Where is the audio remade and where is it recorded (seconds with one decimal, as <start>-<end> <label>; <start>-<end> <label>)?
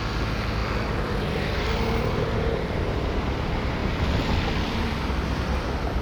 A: 0.0-6.0 recorded